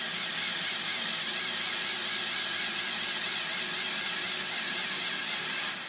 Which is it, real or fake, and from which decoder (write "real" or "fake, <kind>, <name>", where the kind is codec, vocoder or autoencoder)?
real